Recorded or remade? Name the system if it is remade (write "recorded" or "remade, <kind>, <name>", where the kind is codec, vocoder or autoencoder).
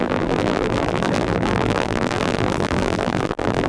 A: remade, vocoder, BigVGAN v2